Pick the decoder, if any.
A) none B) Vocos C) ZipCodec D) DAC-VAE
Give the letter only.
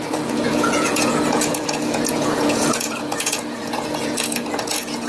B